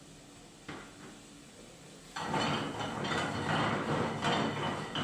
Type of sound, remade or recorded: recorded